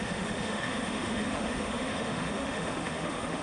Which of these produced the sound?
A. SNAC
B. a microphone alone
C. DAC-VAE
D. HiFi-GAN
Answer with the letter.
C